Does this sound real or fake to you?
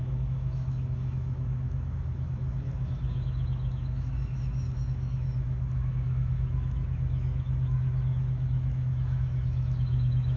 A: fake